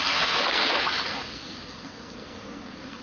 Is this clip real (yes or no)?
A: no